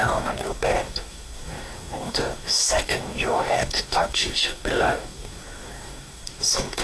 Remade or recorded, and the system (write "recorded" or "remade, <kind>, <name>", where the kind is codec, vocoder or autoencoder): remade, codec, DAC